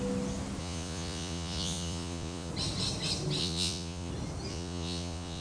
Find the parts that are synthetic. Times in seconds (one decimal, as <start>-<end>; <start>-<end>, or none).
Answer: 0.6-2.5; 3.4-4.1; 4.5-5.4